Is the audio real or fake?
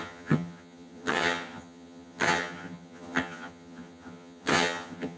fake